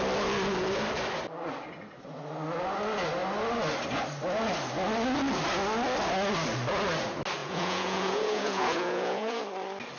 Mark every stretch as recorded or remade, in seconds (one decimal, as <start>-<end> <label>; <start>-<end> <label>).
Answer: 0.0-7.4 recorded; 7.4-9.4 remade; 9.4-10.0 recorded